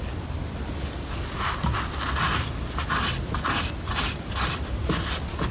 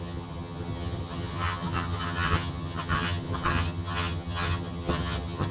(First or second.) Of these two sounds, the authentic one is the first